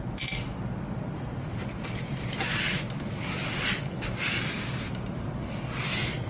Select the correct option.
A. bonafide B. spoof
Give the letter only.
A